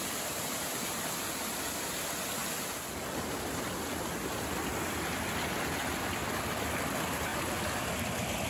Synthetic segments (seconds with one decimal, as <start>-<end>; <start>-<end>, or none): 0.0-1.0